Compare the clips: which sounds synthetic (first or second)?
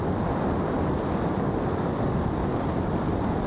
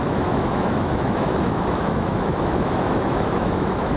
second